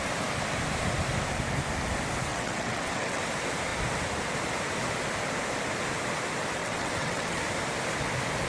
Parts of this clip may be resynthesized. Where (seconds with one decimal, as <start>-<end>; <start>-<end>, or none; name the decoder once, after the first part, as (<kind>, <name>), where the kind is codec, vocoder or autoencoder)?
2.3-3.2 (vocoder, WaveNeXt); 6.6-7.4